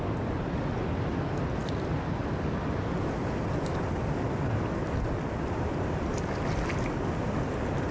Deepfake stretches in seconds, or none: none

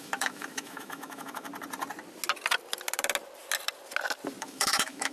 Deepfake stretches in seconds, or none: 0.0-1.5 (autoencoder, DAC-VAE); 4.4-5.1

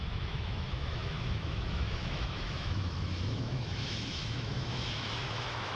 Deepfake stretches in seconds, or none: 0.0-5.8 (autoencoder, DAC-VAE)